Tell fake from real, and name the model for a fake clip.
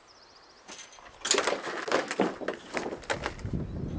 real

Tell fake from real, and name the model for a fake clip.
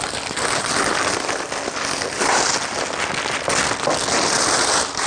real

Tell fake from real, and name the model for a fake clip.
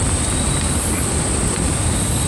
real